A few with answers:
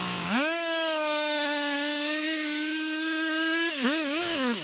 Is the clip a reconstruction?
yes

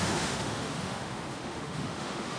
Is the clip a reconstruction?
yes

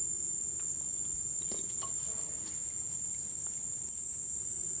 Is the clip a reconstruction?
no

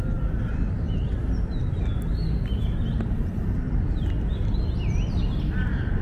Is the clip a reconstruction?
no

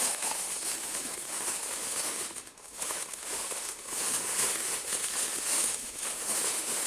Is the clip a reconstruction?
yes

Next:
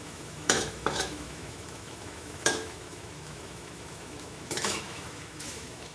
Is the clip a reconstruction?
yes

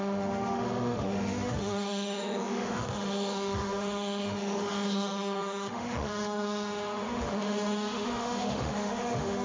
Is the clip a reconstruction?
yes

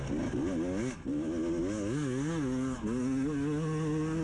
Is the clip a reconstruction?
no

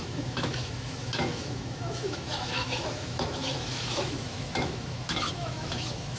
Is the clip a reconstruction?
yes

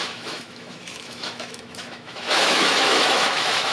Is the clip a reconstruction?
yes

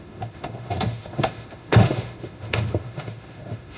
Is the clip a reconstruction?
yes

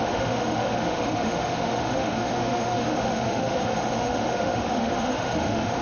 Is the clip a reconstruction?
yes